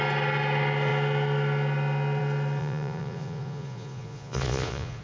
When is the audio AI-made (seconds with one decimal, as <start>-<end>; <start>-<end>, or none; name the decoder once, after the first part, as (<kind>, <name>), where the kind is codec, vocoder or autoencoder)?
2.6-5.0 (vocoder, Vocos)